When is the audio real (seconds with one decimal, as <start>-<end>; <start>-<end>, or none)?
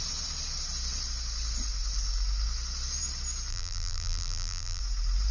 0.0-3.5; 4.8-5.3